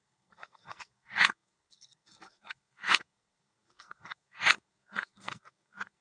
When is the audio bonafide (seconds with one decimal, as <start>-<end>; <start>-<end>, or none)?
none